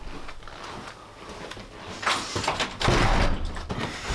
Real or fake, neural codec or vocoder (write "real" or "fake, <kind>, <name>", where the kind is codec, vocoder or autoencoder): real